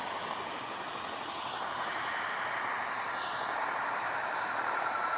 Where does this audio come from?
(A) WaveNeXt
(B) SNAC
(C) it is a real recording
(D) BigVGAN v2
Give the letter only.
C